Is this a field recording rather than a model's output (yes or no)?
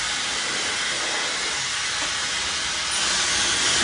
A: yes